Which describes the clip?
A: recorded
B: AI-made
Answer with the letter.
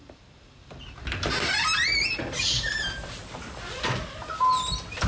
A